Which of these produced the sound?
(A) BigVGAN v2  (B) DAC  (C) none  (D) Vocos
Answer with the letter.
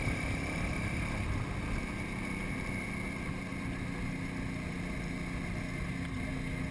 C